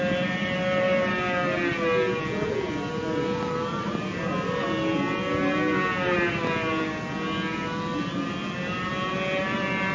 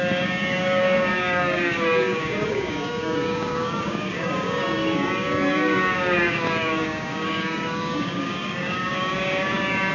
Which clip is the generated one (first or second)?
second